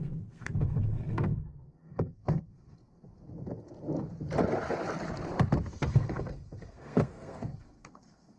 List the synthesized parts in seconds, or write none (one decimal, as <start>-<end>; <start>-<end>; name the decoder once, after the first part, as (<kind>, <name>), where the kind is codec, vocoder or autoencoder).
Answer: 0.0-3.1 (codec, SNAC); 5.7-8.4